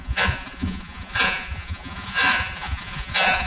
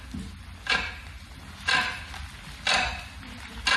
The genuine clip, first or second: second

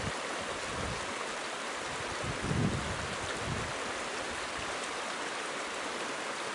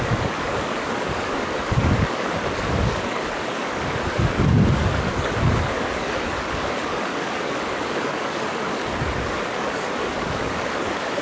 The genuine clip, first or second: first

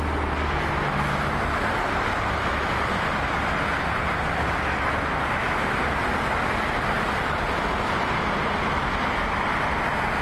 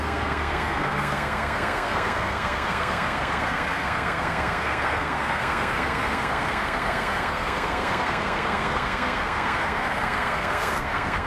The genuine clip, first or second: first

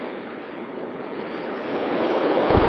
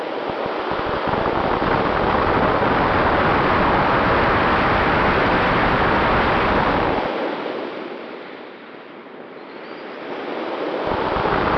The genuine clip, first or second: second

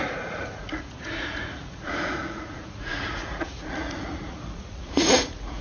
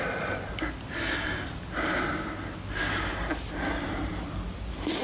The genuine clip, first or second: second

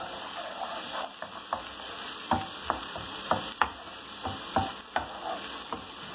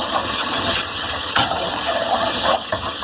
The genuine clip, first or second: first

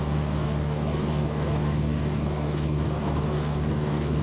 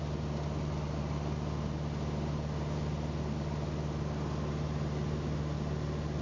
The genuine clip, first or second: second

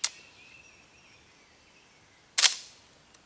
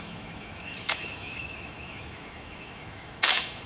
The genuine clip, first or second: first